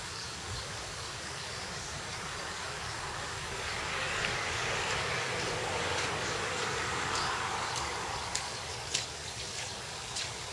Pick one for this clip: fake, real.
fake